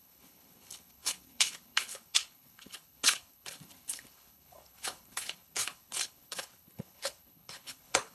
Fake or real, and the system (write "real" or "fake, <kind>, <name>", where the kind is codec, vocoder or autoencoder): fake, codec, HILCodec